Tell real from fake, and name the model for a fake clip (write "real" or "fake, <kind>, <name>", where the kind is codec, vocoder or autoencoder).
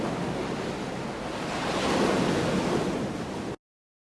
real